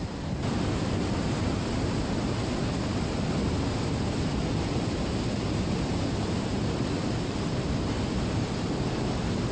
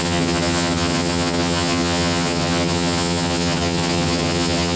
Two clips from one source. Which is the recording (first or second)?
first